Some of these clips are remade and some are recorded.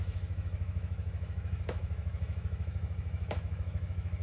remade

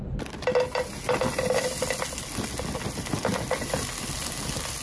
recorded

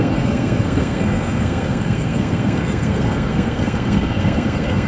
remade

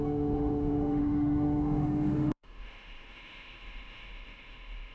remade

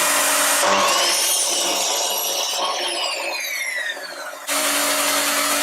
recorded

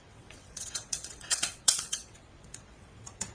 remade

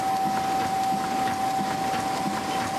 recorded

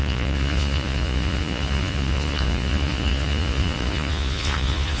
remade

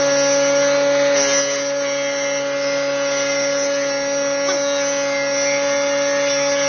recorded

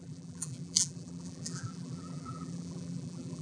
remade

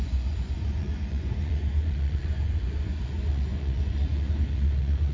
remade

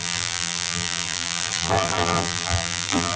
remade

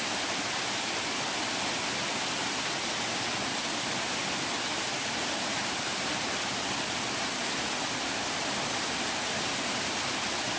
recorded